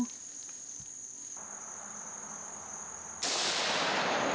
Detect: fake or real real